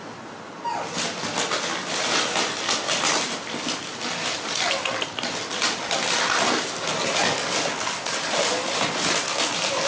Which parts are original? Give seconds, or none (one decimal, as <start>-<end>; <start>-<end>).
0.0-9.9